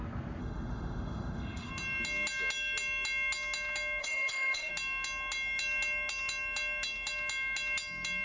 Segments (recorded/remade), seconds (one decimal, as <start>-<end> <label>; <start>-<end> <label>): 0.0-0.4 recorded; 0.4-1.7 remade; 1.7-4.0 recorded; 4.0-4.7 remade; 4.7-8.2 recorded